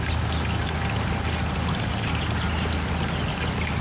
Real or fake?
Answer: real